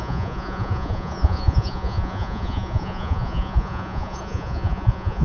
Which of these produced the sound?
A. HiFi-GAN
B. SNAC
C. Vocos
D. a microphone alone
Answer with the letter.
C